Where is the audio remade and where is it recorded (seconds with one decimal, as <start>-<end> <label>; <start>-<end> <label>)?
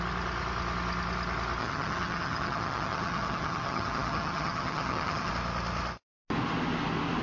0.0-1.6 recorded; 1.6-5.3 remade; 5.3-7.2 recorded